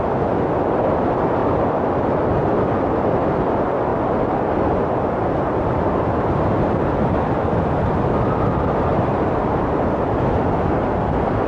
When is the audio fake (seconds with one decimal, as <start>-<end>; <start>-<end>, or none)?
8.9-10.4